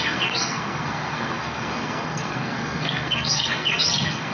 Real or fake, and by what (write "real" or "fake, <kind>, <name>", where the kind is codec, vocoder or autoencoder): fake, codec, SNAC